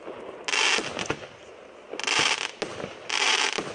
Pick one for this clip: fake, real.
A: real